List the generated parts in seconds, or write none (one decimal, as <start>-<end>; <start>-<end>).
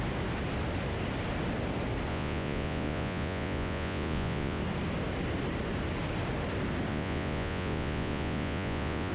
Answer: 2.1-4.6; 6.9-9.1